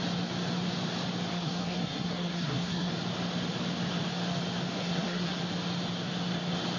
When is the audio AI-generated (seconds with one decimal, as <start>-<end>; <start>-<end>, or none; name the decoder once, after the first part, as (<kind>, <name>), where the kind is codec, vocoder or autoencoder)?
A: 1.3-2.9 (codec, SNAC); 4.8-5.4